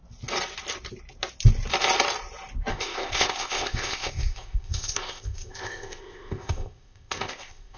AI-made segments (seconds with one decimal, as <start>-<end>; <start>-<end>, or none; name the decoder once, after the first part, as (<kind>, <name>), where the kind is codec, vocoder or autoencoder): 2.7-7.8 (codec, ZipCodec)